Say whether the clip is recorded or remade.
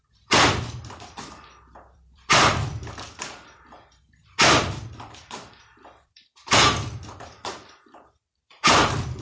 remade